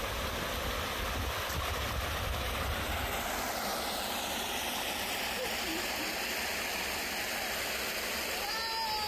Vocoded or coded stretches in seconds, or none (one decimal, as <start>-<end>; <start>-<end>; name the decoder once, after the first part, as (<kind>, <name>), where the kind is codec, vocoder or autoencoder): none